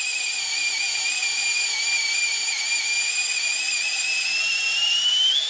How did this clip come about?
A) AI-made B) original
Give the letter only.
B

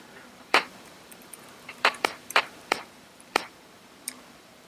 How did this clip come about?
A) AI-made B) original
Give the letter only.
A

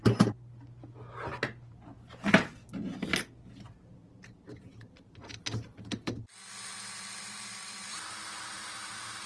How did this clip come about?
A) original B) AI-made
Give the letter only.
A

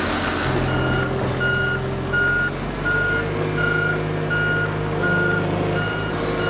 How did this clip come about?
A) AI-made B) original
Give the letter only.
B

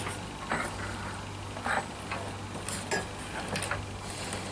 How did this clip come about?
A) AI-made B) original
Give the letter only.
B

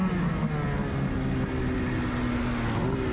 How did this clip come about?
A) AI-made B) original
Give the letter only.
B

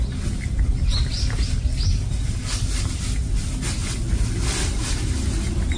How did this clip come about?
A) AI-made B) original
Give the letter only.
B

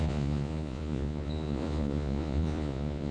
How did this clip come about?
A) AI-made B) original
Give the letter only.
A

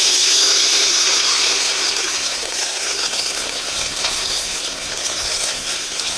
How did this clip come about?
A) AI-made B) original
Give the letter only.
A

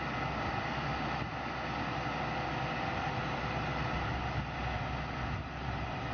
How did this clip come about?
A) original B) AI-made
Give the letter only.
A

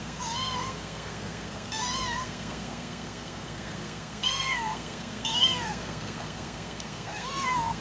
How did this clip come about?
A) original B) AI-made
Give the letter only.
B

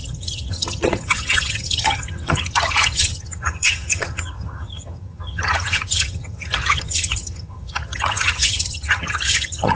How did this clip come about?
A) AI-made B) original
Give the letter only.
A